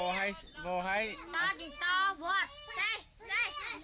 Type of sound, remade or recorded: recorded